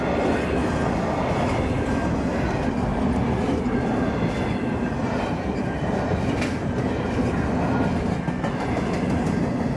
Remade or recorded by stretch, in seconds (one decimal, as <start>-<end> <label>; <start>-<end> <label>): 0.0-9.8 recorded